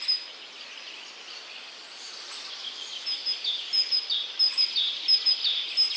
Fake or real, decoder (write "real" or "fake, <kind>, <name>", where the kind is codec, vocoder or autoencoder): real